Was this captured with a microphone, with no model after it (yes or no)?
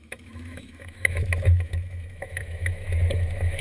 no